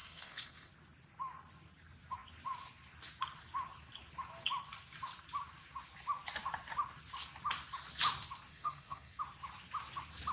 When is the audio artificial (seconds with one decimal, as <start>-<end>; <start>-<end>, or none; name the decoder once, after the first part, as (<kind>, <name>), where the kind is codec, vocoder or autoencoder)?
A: 0.0-0.7 (codec, SNAC); 8.5-9.2